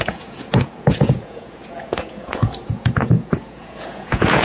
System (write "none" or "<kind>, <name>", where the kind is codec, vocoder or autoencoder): vocoder, Vocos